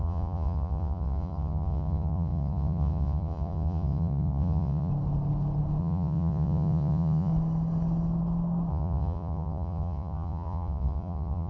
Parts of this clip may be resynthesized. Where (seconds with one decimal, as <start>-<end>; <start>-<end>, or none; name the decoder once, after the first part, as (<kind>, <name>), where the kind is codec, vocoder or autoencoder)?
0.0-4.9 (vocoder, Vocos); 5.8-7.3; 8.7-11.5